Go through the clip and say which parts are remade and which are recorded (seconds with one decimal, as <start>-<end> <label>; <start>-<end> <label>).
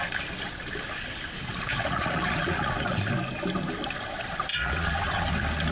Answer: 0.0-1.7 recorded; 1.7-3.1 remade; 3.1-4.5 recorded; 4.5-5.3 remade; 5.3-5.7 recorded